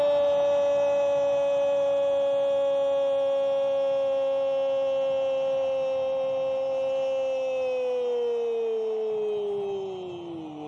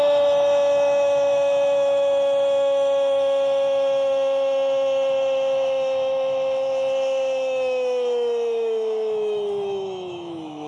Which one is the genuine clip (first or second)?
first